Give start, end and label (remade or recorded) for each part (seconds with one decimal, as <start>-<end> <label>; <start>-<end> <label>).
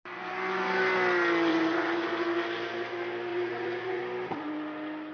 0.0-1.5 recorded; 1.5-2.1 remade; 2.1-3.3 recorded; 3.3-4.0 remade; 4.0-5.1 recorded